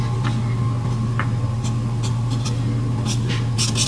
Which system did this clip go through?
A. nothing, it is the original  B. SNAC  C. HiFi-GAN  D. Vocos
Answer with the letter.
A